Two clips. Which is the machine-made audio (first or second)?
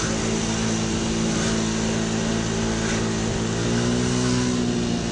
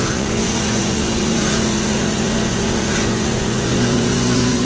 second